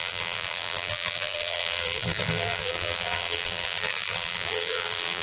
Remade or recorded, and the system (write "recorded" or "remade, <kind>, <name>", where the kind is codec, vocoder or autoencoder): remade, vocoder, BigVGAN v2